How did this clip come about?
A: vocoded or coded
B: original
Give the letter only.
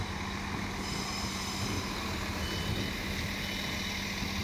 B